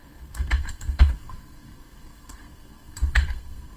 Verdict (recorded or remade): remade